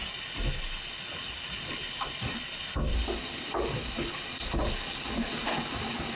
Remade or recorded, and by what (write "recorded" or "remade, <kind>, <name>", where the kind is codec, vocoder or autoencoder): recorded